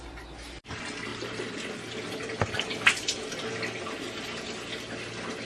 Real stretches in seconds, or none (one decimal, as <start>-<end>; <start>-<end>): 0.0-5.4